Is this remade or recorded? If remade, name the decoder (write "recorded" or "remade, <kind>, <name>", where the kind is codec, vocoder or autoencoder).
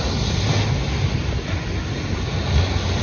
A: recorded